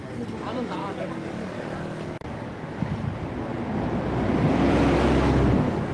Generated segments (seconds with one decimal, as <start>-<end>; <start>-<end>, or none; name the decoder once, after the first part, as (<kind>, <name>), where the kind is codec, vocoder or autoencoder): 0.8-2.9 (codec, DAC)

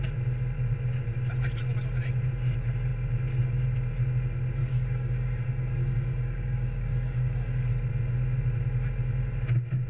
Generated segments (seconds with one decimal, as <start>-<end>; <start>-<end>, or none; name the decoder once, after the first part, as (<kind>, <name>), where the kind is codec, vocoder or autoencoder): 4.6-7.7 (codec, DAC)

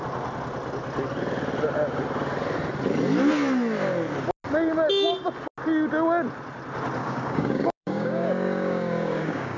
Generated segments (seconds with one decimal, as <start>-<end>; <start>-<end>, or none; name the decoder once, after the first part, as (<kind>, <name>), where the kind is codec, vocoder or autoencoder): 7.0-9.6 (codec, DAC)